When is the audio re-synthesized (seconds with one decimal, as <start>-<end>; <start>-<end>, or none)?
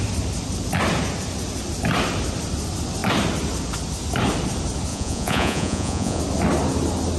4.9-6.2